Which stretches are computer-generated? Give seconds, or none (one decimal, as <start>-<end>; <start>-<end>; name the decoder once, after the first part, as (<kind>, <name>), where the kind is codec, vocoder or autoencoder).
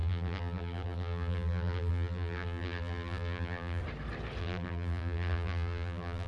0.0-3.8 (vocoder, BigVGAN v2); 4.4-6.3